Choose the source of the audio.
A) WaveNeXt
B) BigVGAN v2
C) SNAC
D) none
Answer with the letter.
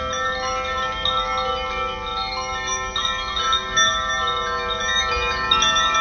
D